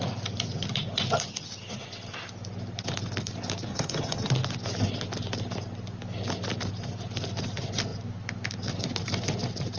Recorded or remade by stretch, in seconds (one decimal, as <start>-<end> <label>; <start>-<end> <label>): 0.0-3.7 recorded; 3.7-4.3 remade; 4.3-9.8 recorded